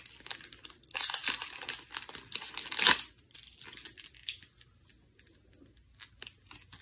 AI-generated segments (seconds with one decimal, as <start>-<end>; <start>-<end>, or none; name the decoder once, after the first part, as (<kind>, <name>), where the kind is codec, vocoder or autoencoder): none